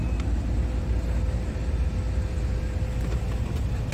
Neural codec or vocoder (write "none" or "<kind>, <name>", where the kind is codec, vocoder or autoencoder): none